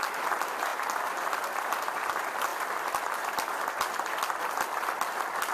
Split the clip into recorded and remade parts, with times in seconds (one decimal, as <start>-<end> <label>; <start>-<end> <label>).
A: 0.0-5.5 recorded